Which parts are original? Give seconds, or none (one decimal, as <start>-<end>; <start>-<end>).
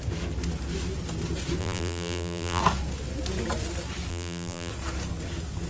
0.0-1.6; 2.6-4.1; 4.7-5.7